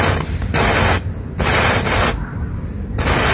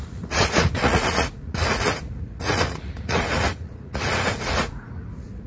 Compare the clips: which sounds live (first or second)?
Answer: first